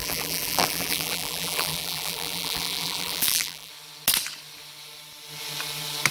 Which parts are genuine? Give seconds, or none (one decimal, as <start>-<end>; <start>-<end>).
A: 3.7-6.1